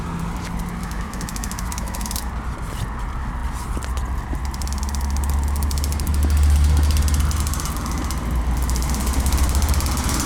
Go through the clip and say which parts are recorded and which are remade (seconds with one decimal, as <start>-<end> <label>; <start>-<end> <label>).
0.0-0.8 recorded; 0.8-2.3 remade; 2.3-10.3 recorded